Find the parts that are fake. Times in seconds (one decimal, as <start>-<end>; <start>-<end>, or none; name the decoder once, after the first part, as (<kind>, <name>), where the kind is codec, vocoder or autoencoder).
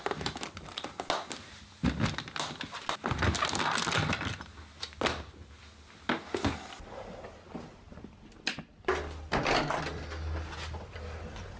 none